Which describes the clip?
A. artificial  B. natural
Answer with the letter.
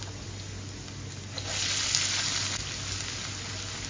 B